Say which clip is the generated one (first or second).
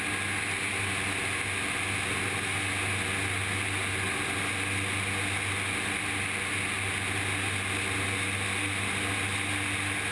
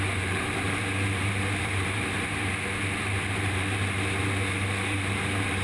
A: second